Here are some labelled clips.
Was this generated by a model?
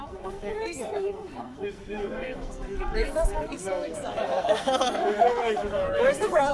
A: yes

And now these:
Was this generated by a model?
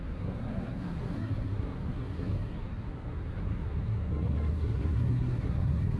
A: yes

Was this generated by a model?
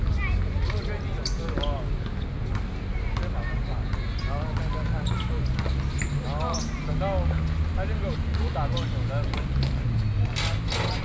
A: no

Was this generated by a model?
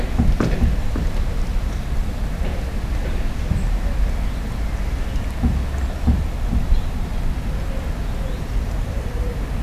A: no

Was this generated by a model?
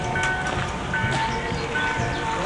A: no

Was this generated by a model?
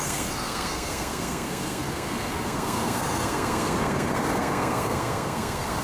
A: yes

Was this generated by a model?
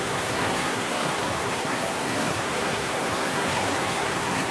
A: yes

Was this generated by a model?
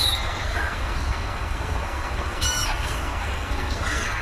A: yes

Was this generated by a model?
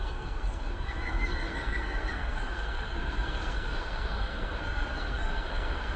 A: yes